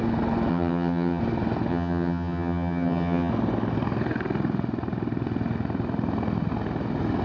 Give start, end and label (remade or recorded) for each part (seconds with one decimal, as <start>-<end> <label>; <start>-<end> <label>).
0.0-0.5 recorded; 0.5-1.2 remade; 1.2-1.7 recorded; 1.7-3.3 remade; 3.3-7.2 recorded